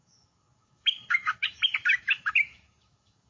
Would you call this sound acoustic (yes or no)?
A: no